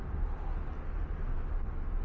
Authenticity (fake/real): real